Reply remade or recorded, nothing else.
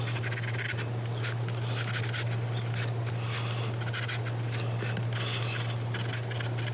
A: recorded